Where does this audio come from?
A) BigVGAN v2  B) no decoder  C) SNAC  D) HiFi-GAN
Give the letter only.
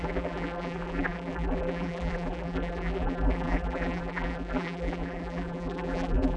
A